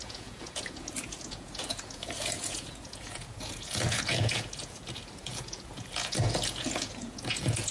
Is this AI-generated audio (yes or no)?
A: yes